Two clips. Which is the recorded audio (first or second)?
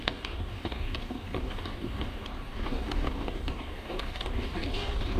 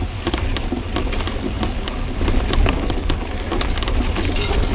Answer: second